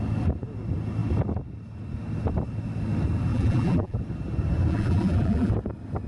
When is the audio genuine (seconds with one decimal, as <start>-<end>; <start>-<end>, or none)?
0.0-3.3; 4.0-4.7; 5.5-6.1